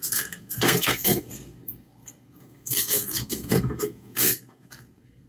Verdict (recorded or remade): remade